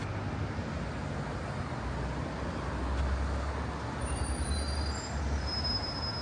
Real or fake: real